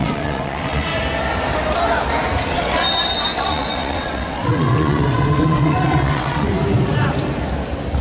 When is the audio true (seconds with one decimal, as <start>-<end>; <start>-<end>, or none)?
0.9-2.5; 6.5-8.0